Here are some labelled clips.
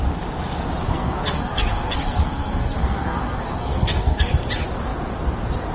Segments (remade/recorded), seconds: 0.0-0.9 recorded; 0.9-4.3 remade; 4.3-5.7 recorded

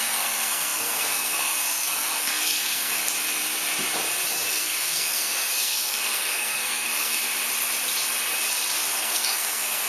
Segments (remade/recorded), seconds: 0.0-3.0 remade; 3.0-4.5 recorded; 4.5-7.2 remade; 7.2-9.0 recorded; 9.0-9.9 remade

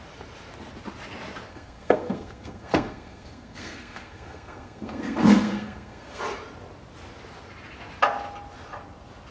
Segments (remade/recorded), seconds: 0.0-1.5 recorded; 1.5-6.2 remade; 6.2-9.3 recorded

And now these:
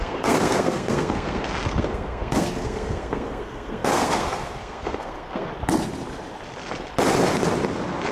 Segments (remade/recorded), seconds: 0.0-5.5 remade; 5.5-8.1 recorded

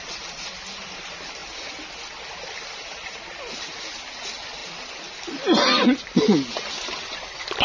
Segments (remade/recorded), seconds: 0.0-7.6 recorded